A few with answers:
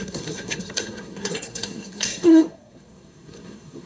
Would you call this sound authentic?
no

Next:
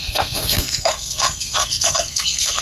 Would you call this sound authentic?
no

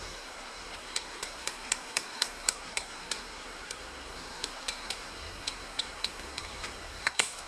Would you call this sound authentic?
no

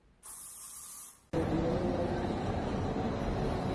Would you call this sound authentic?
yes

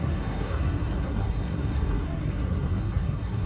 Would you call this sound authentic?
no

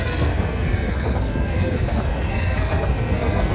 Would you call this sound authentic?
no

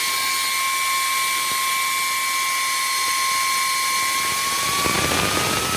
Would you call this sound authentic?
yes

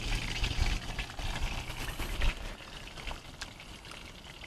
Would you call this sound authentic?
yes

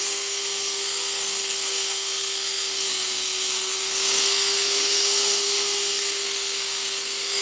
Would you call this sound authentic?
no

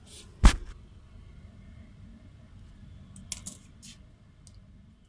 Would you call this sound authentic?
yes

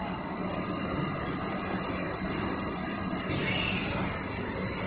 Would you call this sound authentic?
yes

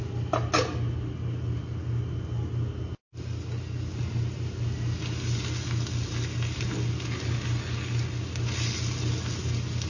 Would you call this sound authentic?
yes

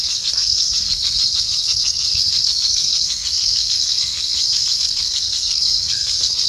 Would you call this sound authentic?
no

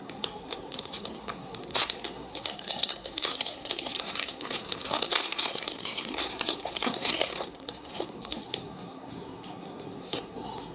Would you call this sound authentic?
no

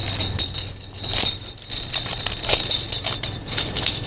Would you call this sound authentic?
yes